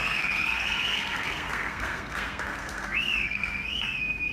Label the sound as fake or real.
fake